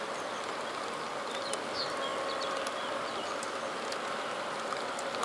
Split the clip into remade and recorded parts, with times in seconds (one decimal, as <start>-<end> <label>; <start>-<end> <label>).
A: 0.0-5.2 recorded